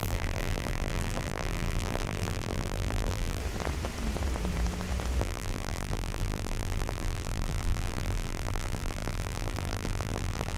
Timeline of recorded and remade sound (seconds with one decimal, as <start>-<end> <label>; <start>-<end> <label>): 0.0-3.4 remade; 3.4-5.2 recorded; 5.2-10.6 remade